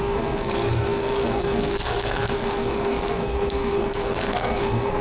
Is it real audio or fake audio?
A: fake